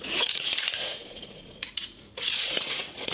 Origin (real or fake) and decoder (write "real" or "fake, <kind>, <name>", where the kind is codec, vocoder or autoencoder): fake, vocoder, Vocos